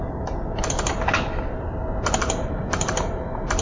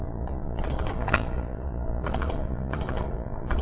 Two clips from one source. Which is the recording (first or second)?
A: first